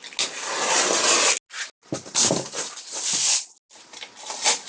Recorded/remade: recorded